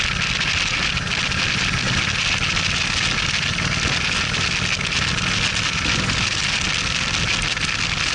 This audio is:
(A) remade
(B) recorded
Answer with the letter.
B